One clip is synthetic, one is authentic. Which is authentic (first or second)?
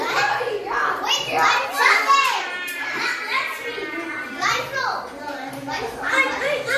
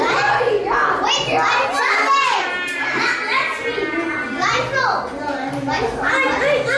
second